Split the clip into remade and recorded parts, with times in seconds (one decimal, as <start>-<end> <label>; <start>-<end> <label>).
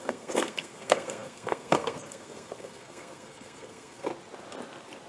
0.0-4.1 remade; 4.1-5.1 recorded